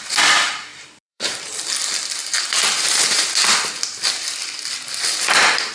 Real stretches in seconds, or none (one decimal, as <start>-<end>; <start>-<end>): 0.0-0.7; 1.4-2.2; 3.3-5.7